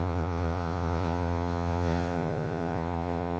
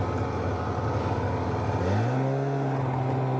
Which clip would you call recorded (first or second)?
second